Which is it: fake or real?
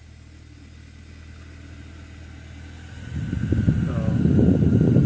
real